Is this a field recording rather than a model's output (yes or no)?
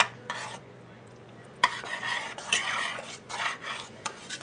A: no